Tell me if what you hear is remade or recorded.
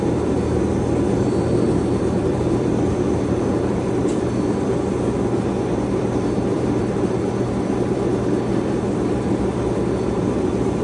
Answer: remade